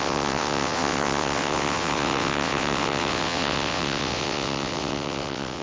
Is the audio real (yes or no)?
no